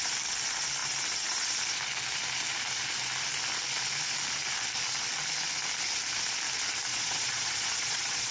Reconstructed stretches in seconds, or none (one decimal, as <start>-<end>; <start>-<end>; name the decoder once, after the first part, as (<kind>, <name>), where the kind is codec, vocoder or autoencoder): 6.9-8.3 (vocoder, Vocos)